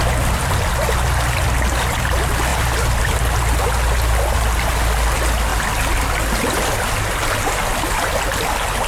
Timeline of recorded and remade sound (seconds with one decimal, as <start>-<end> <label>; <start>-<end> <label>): 0.0-8.9 recorded